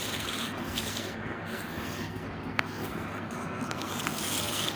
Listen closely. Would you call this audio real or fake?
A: fake